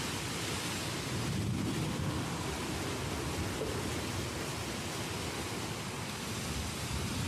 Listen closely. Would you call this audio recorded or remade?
recorded